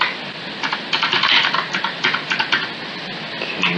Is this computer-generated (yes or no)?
no